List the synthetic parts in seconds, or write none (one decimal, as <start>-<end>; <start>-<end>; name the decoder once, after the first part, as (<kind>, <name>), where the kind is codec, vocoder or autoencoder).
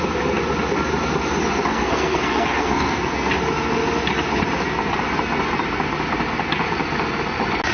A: 1.7-3.3 (codec, SNAC)